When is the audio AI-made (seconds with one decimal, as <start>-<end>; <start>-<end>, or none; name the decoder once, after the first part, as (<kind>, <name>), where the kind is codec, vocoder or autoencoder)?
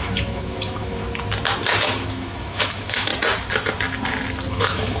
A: 0.0-1.0 (autoencoder, DAC-VAE); 2.0-3.1; 4.5-5.0